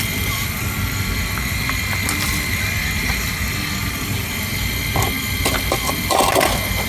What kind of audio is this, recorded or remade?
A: recorded